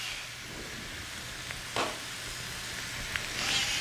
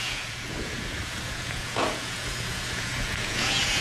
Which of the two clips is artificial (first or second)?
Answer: second